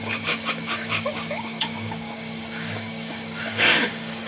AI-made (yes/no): yes